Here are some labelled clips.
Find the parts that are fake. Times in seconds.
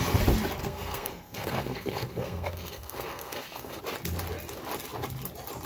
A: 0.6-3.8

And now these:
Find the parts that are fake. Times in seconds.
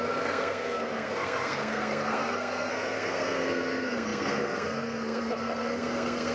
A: 0.0-6.3